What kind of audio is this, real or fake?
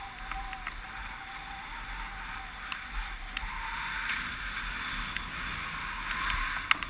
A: real